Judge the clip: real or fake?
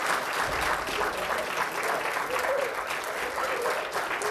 real